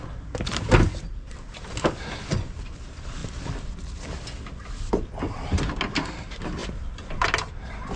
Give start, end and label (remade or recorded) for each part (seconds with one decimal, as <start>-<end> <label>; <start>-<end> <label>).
0.0-0.9 recorded; 0.9-1.6 remade; 1.6-8.0 recorded